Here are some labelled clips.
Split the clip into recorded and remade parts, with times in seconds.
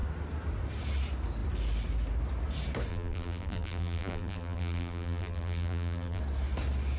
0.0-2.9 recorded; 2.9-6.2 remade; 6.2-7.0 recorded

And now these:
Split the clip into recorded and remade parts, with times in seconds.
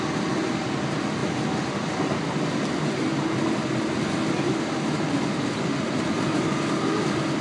0.0-7.4 recorded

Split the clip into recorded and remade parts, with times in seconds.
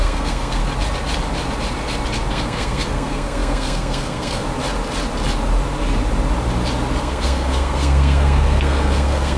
0.0-0.6 remade; 0.6-2.3 recorded; 2.3-4.4 remade; 4.4-7.0 recorded; 7.0-9.4 remade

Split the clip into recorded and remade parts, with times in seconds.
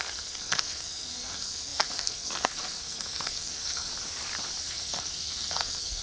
0.0-3.9 remade; 3.9-4.6 recorded; 4.6-6.0 remade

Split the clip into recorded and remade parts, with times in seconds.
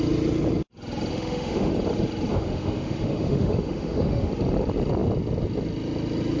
0.0-1.1 recorded; 1.1-1.7 remade; 1.7-2.3 recorded; 2.3-4.3 remade; 4.3-6.4 recorded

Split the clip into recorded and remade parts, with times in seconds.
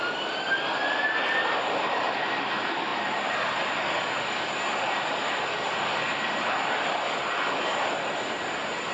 0.0-8.9 recorded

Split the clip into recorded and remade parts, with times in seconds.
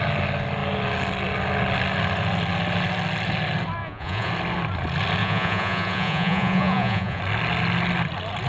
0.0-3.8 recorded; 3.8-4.3 remade; 4.3-5.2 recorded; 5.2-7.2 remade; 7.2-8.5 recorded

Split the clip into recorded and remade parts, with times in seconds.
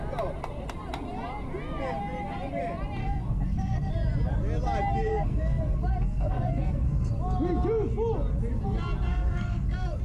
0.0-3.0 recorded; 3.0-3.9 remade; 3.9-5.1 recorded; 5.1-7.1 remade; 7.1-9.1 recorded; 9.1-10.0 remade